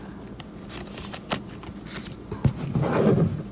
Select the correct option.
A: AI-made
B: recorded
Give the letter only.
B